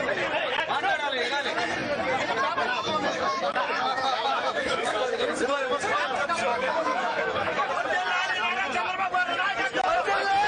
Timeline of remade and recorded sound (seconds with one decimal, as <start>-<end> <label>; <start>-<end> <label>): 0.0-2.7 recorded; 2.7-5.3 remade; 5.3-6.5 recorded; 6.5-7.7 remade; 7.7-10.5 recorded